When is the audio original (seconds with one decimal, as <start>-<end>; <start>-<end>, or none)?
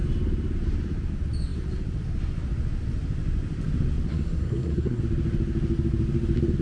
0.0-4.1; 5.0-6.6